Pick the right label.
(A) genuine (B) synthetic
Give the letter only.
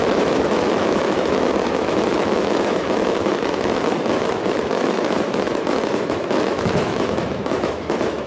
B